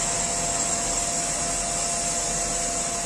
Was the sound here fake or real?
real